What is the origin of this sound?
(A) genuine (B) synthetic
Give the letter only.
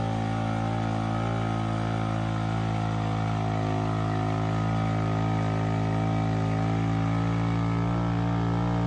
A